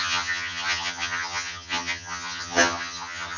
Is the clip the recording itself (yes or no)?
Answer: no